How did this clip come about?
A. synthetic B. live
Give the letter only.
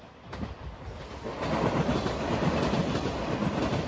B